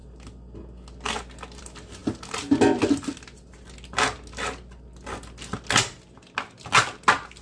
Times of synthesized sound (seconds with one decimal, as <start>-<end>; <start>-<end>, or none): none